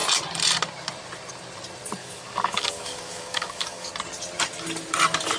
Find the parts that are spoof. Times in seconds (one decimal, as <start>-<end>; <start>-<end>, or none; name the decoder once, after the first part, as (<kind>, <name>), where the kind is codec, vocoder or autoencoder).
2.0-3.9 (codec, DAC)